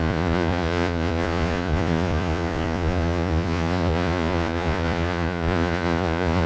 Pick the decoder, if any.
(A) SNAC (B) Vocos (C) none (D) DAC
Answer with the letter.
B